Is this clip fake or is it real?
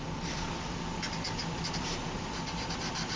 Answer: real